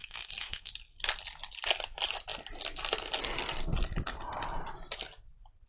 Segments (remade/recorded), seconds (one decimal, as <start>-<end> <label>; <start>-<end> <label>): 0.0-0.7 remade; 0.7-5.7 recorded